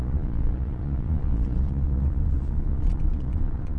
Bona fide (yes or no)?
no